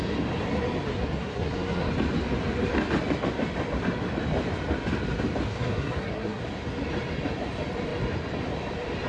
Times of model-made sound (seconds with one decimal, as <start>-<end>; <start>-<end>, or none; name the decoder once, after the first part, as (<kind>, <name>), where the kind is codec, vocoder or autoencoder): 0.9-1.9 (codec, SNAC); 5.5-6.4

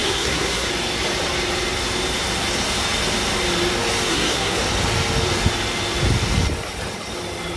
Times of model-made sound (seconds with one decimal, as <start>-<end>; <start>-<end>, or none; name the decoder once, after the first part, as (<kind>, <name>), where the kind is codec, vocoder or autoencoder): 0.0-0.7 (codec, SNAC); 4.1-4.6